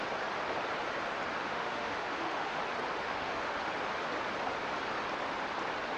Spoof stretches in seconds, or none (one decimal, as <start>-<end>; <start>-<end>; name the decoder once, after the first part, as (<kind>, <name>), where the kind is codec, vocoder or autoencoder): 1.4-2.6 (autoencoder, DAC-VAE); 3.0-3.7